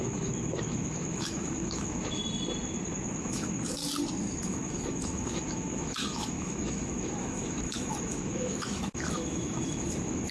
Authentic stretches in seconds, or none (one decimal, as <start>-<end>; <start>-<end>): 2.2-3.2; 3.8-4.4